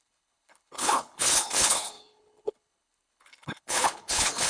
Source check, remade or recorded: remade